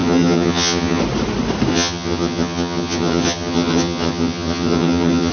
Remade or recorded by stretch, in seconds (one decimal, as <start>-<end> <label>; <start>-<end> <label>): 0.0-1.0 remade; 1.0-1.7 recorded; 1.7-5.3 remade